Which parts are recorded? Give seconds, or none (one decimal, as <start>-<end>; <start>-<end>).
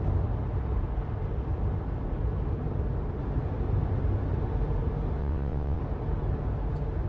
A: 0.0-5.2; 5.8-7.1